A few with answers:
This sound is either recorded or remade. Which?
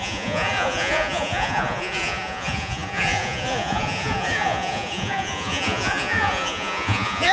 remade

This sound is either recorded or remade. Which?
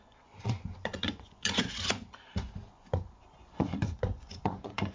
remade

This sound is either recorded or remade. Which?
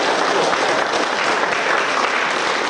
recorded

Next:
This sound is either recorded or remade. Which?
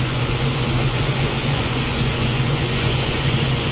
remade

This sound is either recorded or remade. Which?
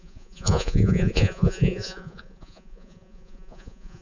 remade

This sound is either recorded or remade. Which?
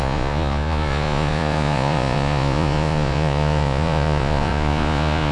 remade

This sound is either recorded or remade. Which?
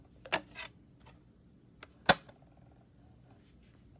recorded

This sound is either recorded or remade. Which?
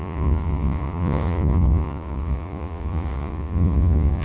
remade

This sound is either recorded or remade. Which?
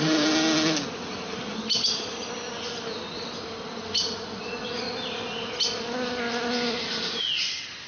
recorded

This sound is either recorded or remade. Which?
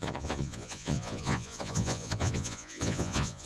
remade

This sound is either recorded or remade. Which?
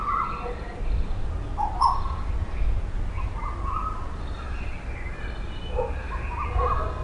recorded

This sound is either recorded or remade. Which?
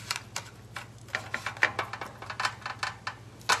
recorded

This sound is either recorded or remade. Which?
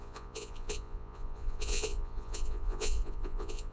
remade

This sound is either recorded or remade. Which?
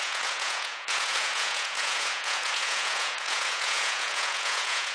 remade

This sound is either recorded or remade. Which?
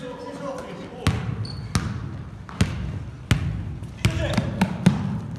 recorded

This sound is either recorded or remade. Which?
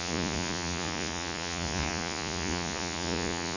remade